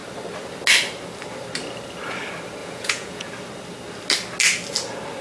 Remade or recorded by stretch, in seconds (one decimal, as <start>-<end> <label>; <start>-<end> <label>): 0.0-2.6 recorded; 2.6-3.3 remade; 3.3-5.2 recorded